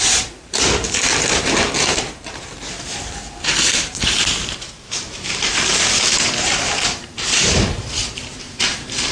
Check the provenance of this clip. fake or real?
fake